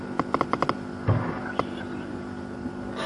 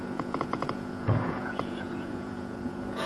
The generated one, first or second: second